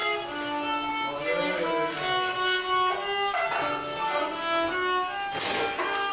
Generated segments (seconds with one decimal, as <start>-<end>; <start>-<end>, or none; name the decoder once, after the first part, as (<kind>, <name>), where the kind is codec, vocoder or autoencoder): none